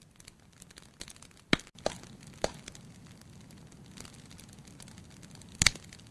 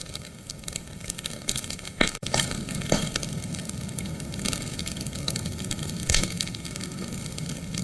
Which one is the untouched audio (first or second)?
first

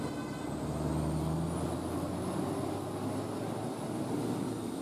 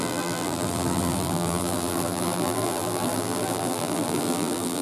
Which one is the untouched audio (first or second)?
first